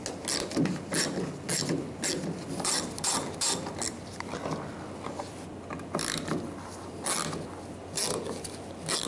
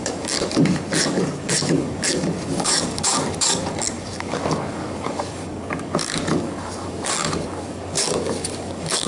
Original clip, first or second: first